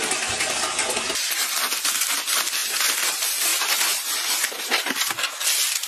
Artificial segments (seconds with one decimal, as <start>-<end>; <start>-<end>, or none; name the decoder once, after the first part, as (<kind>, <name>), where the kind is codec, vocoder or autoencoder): 2.6-3.1 (vocoder, BigVGAN v2); 3.5-4.4